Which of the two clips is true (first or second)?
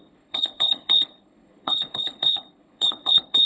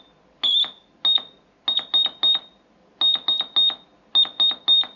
second